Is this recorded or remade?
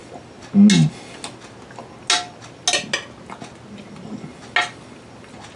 recorded